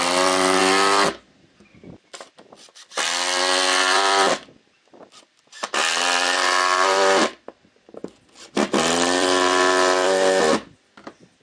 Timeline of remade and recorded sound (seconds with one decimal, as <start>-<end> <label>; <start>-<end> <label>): 0.0-0.6 remade; 0.6-1.2 recorded; 1.2-11.4 remade